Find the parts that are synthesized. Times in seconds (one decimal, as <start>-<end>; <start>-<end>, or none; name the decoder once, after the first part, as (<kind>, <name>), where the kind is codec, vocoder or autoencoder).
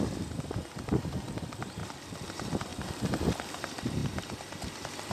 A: 0.0-1.8 (vocoder, BigVGAN v2); 2.3-2.7; 3.4-5.1